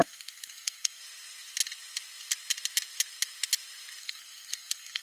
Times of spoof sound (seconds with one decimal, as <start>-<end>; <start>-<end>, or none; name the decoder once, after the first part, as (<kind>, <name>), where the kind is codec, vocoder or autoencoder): 0.0-1.0 (codec, SNAC); 4.0-5.0

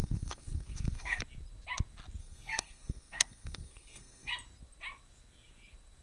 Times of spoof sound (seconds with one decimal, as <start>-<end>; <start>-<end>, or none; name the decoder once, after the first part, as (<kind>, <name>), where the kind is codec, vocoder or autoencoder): 0.0-1.2 (codec, SNAC); 2.2-4.3

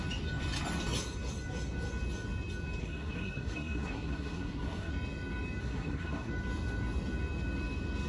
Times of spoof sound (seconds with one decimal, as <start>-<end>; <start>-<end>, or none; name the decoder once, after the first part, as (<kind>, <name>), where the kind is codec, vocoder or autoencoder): 2.8-4.9 (codec, SNAC); 5.6-6.3